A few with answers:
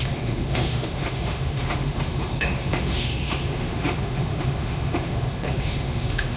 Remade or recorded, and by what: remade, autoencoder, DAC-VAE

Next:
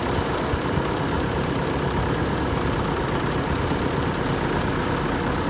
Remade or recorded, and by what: recorded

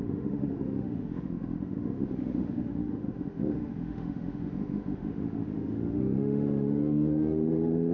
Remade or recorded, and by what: remade, autoencoder, DAC-VAE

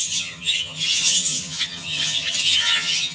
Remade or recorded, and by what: remade, vocoder, HiFi-GAN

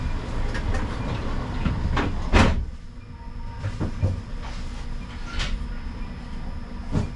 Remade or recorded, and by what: recorded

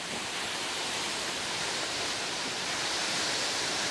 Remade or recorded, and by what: remade, vocoder, BigVGAN v2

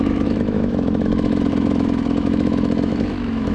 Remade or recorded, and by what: remade, autoencoder, DAC-VAE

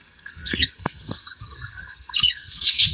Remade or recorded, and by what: remade, codec, SNAC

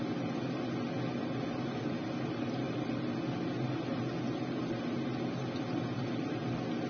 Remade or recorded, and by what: recorded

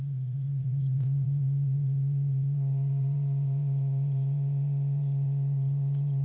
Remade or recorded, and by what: remade, vocoder, Vocos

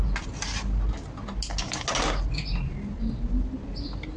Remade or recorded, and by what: recorded